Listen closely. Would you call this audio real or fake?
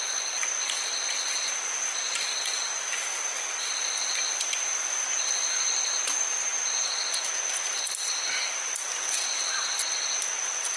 real